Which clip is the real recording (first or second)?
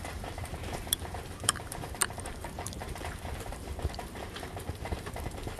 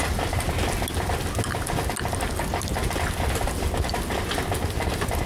second